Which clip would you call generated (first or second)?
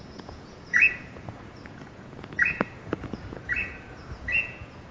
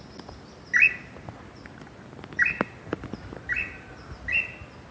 first